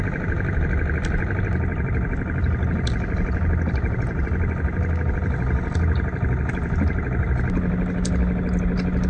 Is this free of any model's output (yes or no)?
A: yes